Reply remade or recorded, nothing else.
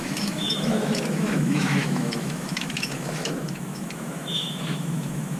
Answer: remade